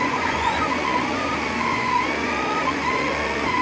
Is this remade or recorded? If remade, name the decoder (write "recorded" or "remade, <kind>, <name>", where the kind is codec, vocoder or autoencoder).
remade, vocoder, Vocos